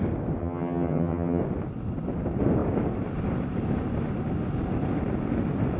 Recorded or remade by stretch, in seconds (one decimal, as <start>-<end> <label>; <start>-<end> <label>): 0.0-0.4 recorded; 0.4-1.4 remade; 1.4-5.8 recorded